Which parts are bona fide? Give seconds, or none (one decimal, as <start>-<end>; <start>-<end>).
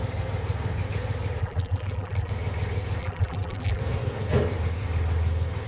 0.0-1.4; 2.3-3.0; 3.8-5.7